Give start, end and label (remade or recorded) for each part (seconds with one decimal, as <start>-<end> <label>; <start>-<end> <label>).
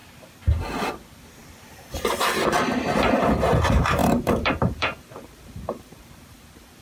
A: 0.0-4.0 recorded; 4.0-6.8 remade